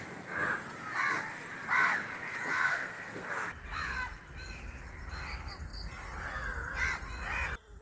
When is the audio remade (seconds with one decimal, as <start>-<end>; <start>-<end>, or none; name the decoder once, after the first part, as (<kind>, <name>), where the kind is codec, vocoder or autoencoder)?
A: 2.7-3.3 (codec, SNAC)